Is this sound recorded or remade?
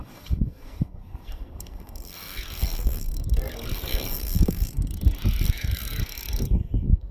remade